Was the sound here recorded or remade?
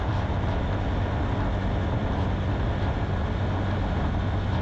recorded